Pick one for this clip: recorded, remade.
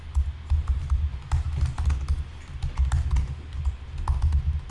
recorded